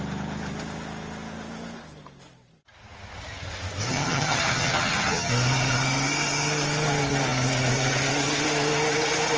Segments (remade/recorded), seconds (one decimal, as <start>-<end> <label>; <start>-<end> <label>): 0.0-3.9 recorded; 3.9-5.3 remade; 5.3-9.4 recorded